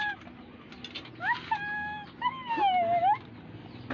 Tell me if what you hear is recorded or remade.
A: recorded